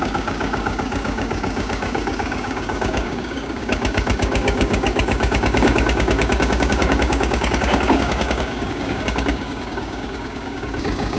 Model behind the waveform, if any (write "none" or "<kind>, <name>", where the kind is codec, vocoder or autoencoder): codec, DAC